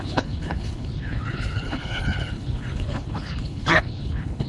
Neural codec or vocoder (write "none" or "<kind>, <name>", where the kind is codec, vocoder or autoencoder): codec, HILCodec